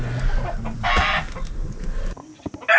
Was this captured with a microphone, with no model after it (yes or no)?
yes